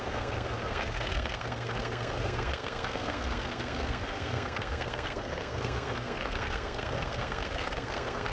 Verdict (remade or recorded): remade